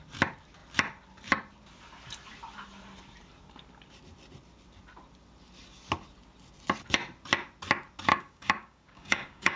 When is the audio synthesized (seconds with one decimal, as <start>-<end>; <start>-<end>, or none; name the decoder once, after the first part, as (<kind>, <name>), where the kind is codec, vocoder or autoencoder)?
8.1-9.6 (codec, DAC)